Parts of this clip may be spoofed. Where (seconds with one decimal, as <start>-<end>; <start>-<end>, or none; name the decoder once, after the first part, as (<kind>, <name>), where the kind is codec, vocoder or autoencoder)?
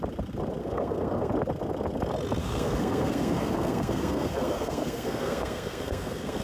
0.6-1.3 (codec, SNAC); 2.4-6.4